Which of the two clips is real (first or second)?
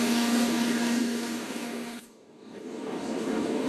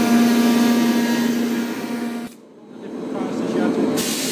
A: second